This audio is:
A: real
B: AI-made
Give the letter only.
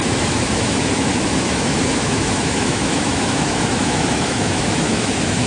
B